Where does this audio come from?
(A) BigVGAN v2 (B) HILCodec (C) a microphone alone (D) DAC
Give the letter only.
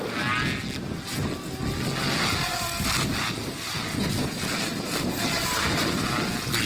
C